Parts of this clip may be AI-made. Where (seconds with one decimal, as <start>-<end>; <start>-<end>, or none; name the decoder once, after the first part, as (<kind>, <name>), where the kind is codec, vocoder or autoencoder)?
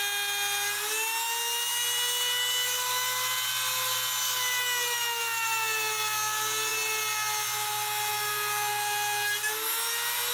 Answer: none